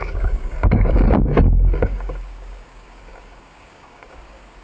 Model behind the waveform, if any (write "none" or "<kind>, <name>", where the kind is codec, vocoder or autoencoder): codec, DAC